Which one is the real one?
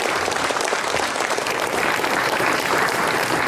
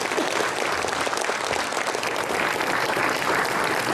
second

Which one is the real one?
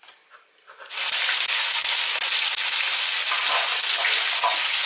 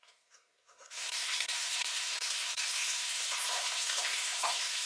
first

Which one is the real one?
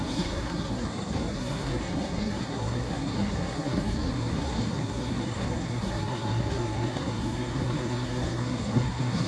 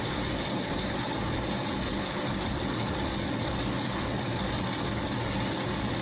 second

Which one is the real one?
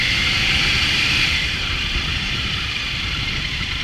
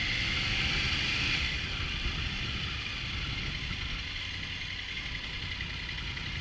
second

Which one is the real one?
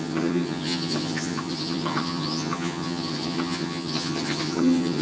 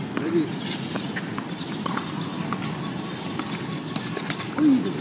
second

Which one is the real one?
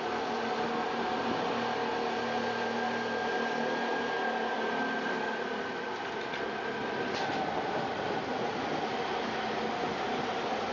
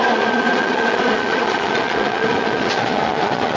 first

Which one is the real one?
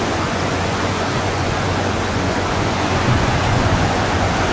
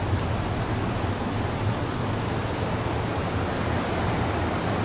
second